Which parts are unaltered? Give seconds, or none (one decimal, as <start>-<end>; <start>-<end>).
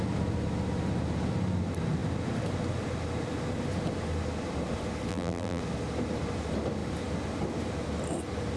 0.0-5.1; 5.6-8.6